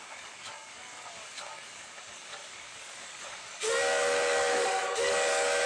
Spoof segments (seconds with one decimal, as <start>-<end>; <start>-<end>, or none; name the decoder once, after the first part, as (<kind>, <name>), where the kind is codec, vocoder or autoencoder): 0.0-5.7 (codec, DAC)